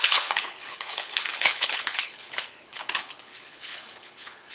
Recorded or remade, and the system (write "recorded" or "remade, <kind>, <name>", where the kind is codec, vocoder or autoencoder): remade, codec, HILCodec